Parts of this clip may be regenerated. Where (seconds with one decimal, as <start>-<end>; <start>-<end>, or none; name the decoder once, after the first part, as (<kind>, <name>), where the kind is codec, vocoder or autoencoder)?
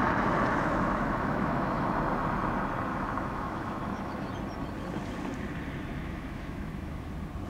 0.5-1.9 (autoencoder, DAC-VAE); 2.9-4.3; 6.0-7.1